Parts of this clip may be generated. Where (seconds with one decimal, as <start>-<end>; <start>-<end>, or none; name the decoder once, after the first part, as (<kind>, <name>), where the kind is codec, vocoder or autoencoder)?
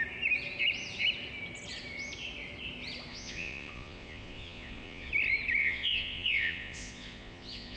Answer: 3.1-5.1 (vocoder, Vocos); 5.6-7.8